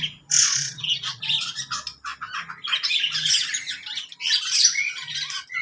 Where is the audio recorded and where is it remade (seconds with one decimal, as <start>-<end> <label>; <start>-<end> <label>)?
0.0-0.4 recorded; 0.4-1.3 remade; 1.3-5.6 recorded